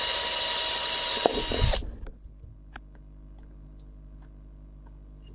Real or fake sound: real